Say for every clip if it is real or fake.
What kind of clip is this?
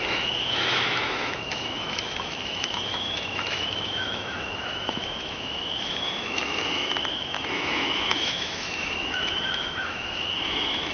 fake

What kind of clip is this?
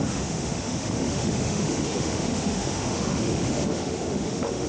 fake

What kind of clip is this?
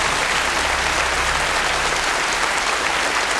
real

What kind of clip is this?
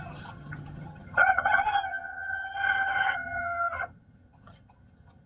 fake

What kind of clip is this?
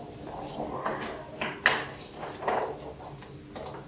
real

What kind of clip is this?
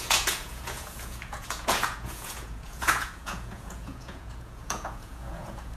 fake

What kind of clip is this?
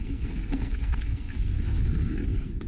fake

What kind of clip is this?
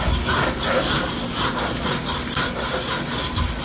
real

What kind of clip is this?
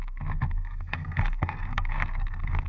fake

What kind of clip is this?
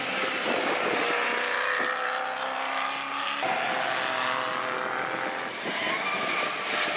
real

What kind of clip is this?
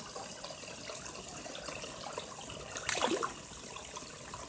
real